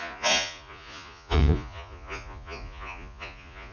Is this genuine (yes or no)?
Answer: no